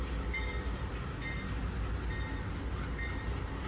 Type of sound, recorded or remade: recorded